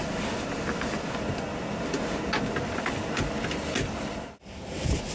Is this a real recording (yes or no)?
yes